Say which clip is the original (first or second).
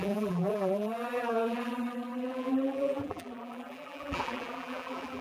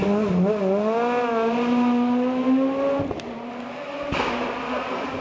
second